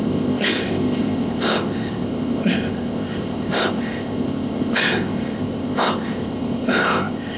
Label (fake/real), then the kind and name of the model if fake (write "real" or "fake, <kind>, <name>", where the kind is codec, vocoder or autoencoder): fake, codec, ZipCodec